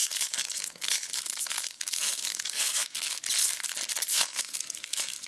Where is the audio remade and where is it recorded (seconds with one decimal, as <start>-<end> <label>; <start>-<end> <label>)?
0.0-3.2 remade; 3.2-4.1 recorded; 4.1-5.3 remade

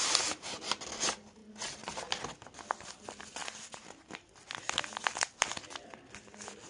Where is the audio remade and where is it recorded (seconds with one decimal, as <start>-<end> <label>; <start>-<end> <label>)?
0.0-6.7 recorded